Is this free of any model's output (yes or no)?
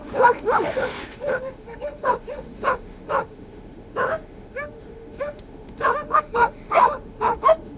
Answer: no